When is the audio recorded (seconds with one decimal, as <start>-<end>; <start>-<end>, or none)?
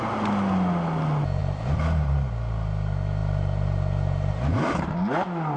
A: 0.0-1.4; 2.3-3.2; 4.9-5.6